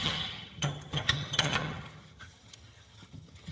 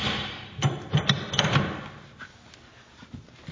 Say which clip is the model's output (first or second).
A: first